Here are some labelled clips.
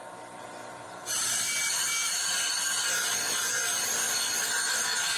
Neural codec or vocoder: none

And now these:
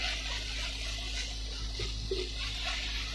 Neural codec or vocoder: none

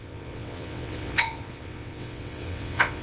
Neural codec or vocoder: vocoder, WaveNeXt